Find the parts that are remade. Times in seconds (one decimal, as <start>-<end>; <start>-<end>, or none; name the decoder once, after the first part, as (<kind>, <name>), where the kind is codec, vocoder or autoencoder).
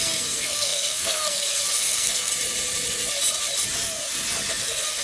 0.0-2.3 (codec, SNAC); 4.5-5.0